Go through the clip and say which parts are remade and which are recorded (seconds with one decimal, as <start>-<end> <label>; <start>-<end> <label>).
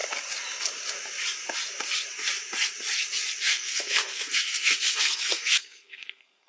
0.0-3.4 recorded; 3.4-6.5 remade